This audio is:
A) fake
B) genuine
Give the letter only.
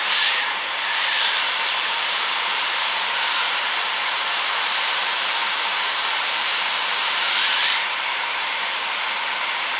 A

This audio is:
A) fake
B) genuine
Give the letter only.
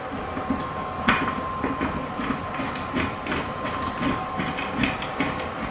B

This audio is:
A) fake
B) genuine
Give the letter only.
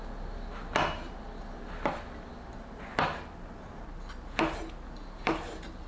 B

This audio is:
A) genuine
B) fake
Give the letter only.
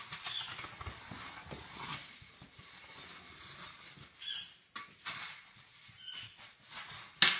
A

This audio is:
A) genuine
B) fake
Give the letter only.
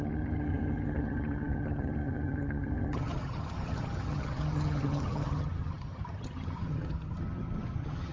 B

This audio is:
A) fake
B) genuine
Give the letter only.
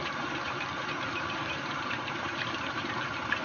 A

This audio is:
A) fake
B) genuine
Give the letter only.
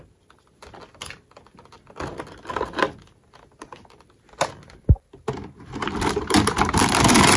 B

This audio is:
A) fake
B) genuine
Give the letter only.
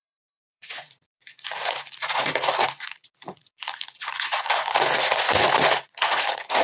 A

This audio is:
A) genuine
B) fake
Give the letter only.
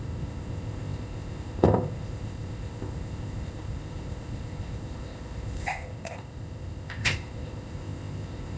B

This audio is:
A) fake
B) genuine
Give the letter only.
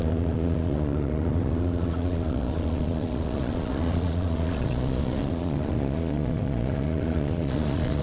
A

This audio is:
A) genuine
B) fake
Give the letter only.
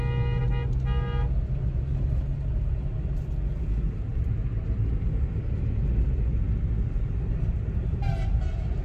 A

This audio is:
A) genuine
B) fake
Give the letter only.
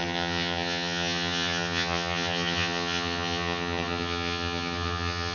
B